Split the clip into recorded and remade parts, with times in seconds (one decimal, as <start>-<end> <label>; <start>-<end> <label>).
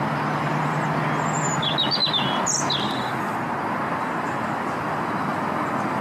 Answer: 0.0-6.0 recorded